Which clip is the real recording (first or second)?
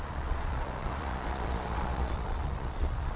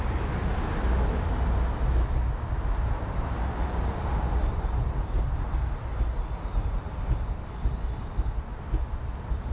second